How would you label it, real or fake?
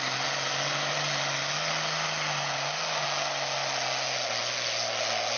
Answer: real